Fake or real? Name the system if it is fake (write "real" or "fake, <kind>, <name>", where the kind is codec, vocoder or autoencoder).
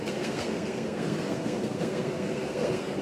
fake, codec, SNAC